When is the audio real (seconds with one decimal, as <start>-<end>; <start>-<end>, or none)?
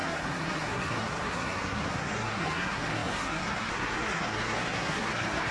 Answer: none